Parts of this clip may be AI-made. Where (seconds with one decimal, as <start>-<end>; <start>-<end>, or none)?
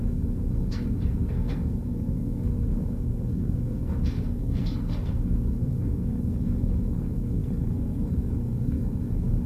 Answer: 0.0-9.5